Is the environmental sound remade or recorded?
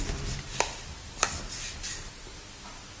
recorded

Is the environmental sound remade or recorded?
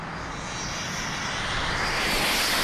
recorded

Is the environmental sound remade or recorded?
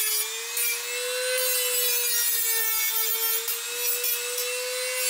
recorded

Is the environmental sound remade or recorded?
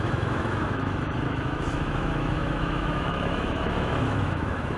remade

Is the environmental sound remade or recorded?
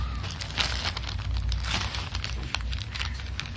recorded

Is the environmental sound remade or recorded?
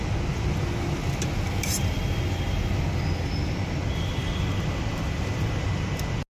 recorded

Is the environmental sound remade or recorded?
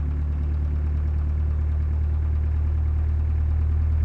recorded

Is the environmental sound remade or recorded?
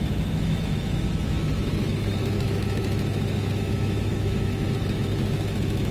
remade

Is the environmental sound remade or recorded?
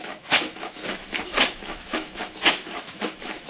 remade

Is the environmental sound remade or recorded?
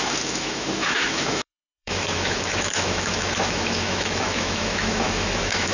remade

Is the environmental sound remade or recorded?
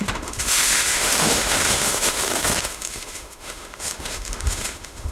remade